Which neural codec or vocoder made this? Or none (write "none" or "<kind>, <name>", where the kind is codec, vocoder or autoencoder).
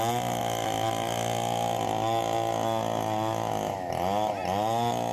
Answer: none